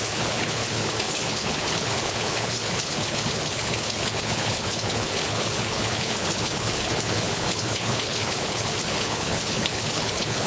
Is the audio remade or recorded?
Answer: remade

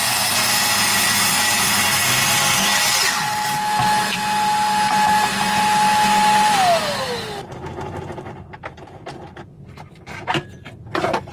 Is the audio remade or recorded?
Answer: recorded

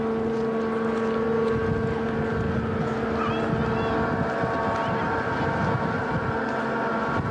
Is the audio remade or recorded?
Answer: recorded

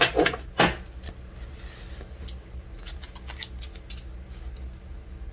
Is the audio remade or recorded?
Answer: recorded